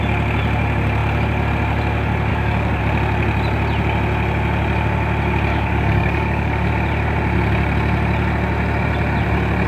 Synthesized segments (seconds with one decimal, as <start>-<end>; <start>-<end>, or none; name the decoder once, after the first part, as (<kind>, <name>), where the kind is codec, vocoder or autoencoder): 2.3-2.8 (codec, DAC); 5.5-6.7